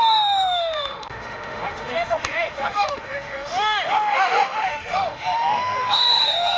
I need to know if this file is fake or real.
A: fake